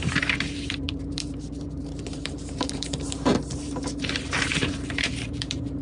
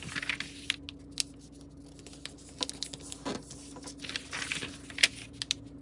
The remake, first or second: first